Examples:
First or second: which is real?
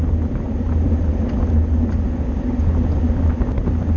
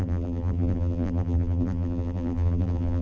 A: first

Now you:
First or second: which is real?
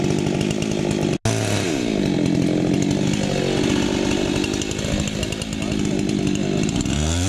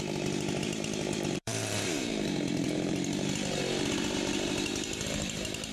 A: first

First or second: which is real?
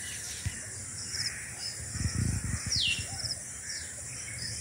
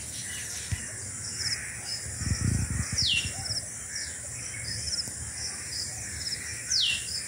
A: second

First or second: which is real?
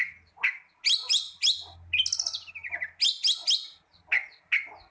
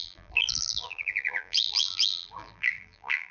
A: first